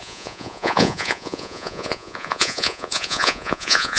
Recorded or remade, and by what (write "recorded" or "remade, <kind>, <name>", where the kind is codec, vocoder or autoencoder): remade, vocoder, Vocos